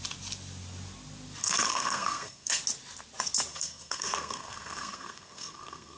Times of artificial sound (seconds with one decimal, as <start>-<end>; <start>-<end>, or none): 1.4-2.6; 3.5-6.0